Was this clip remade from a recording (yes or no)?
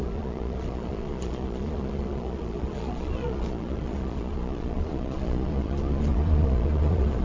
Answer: yes